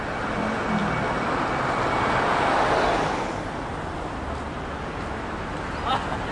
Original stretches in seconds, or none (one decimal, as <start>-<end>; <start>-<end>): 0.0-6.3